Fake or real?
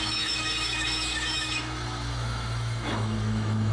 fake